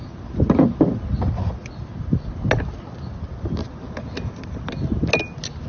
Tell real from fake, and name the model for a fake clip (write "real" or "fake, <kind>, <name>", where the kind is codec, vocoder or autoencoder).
real